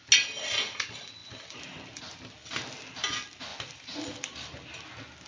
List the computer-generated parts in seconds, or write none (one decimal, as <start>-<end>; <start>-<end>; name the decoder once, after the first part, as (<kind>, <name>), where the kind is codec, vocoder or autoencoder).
1.2-2.0 (vocoder, BigVGAN v2); 3.5-4.7